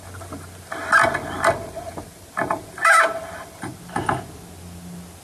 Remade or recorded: recorded